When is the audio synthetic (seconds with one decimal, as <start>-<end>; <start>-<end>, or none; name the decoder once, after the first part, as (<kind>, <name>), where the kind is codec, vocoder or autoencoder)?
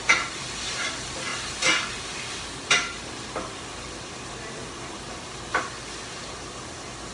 none